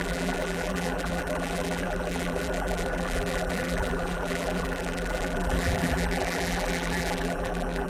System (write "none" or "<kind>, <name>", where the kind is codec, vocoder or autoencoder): vocoder, BigVGAN v2